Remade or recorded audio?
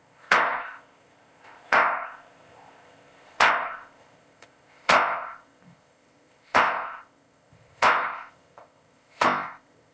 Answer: remade